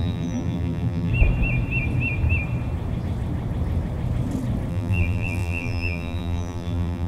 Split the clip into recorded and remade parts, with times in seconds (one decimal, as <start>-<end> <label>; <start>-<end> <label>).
0.0-1.1 remade; 1.1-4.7 recorded; 4.7-7.1 remade